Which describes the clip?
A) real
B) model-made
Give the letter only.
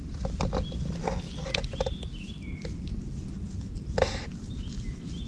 A